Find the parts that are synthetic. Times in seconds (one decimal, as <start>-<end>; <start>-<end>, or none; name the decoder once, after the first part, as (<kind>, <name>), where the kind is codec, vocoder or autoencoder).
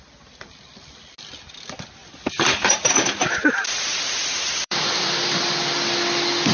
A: 2.0-5.5 (vocoder, BigVGAN v2)